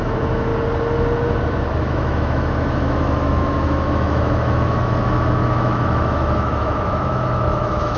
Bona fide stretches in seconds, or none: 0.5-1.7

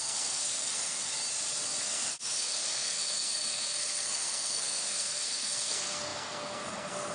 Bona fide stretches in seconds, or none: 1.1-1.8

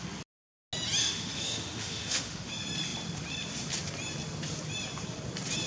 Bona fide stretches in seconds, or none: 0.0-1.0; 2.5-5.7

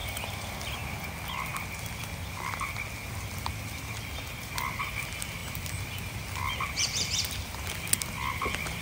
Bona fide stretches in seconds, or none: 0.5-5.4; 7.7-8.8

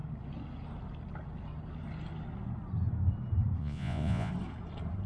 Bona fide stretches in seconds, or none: 0.0-3.6; 4.3-5.1

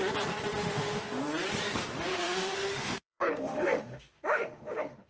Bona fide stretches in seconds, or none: 0.0-0.6; 1.2-2.1